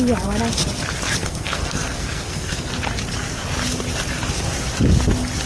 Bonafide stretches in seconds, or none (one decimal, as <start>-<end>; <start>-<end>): 0.0-1.2; 2.7-5.5